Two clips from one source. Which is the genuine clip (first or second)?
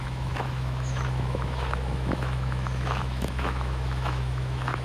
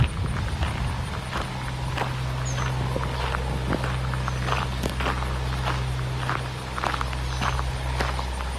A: second